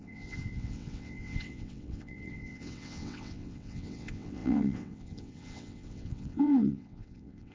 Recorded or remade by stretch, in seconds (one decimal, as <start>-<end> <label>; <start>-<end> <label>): 0.0-7.5 remade